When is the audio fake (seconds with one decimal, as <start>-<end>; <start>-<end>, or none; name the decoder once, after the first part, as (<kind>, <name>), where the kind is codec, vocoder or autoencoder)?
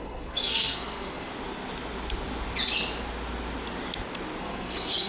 0.0-1.3 (codec, SNAC); 4.4-5.1